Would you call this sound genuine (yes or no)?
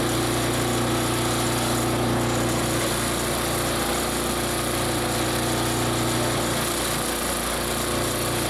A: yes